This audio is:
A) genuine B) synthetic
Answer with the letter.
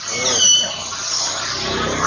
A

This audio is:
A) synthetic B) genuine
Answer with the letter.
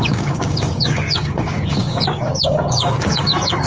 A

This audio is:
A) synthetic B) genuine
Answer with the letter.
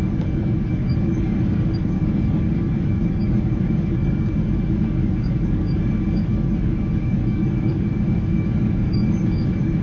A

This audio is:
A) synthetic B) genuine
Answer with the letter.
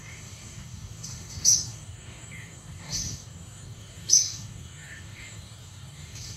A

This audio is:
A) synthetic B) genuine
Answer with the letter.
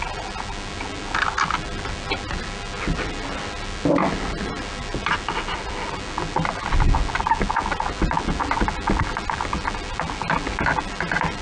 B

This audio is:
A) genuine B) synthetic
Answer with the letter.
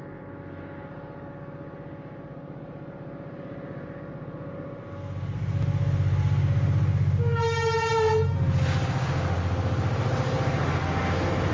A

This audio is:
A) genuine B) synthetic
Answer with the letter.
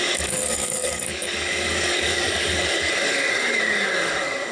B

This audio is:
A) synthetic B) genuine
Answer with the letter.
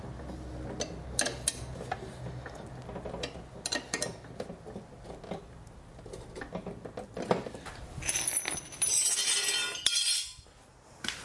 B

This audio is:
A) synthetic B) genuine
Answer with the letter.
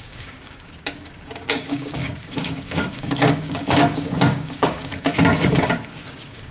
A